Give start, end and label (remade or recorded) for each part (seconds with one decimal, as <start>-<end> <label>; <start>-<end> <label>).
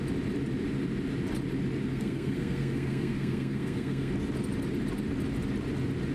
0.0-1.9 recorded; 1.9-4.1 remade; 4.1-6.1 recorded